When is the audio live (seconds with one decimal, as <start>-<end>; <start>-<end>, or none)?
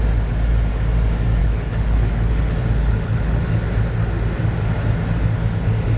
0.0-1.4; 3.4-6.0